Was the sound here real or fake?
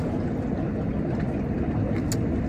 real